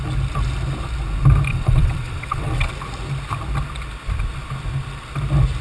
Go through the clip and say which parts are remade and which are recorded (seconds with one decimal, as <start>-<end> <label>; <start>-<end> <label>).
0.0-1.5 recorded; 1.5-2.7 remade; 2.7-5.6 recorded